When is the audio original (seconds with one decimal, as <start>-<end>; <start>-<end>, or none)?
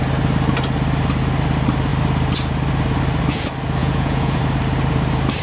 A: 0.0-3.8; 4.4-5.4